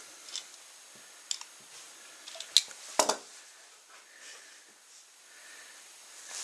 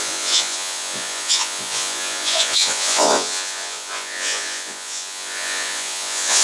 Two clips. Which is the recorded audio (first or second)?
first